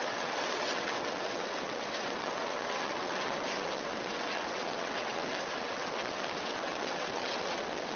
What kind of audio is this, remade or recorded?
remade